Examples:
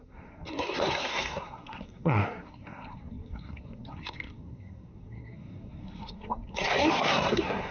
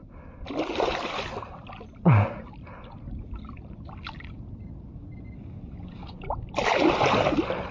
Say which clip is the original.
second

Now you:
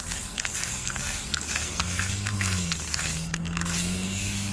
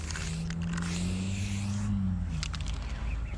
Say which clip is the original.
second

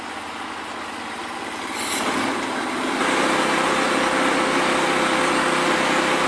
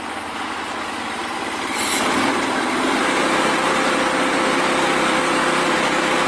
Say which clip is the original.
first